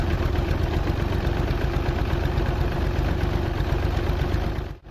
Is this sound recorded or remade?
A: recorded